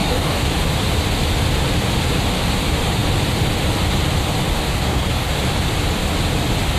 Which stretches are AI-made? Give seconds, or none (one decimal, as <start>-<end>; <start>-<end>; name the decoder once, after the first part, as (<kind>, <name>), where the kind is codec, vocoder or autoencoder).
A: 0.0-0.5 (codec, DAC); 4.7-5.3